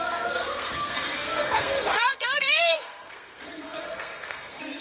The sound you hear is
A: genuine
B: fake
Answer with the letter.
B